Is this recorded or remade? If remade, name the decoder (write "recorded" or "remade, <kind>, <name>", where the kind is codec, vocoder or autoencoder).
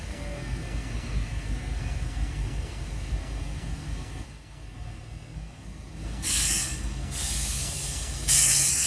remade, codec, SNAC